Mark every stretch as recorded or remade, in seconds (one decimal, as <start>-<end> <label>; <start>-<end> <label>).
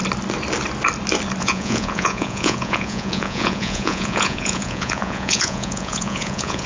0.0-1.4 recorded; 1.4-6.7 remade